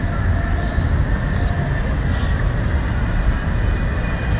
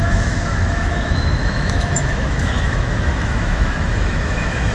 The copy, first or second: second